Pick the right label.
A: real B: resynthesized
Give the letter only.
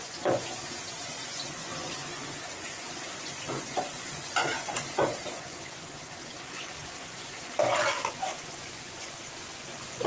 B